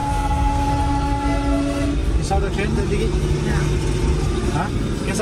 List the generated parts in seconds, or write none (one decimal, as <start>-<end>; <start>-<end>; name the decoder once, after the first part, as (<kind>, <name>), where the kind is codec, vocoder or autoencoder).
0.0-0.7 (codec, SNAC)